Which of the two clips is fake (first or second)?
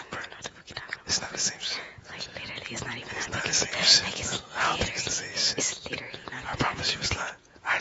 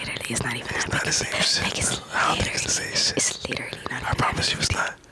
first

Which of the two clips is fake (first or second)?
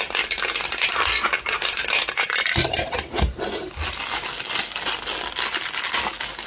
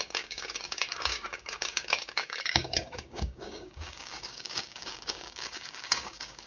second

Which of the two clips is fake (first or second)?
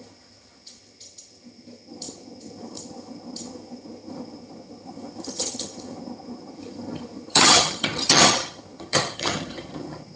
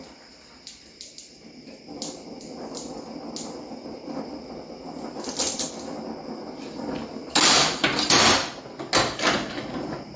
first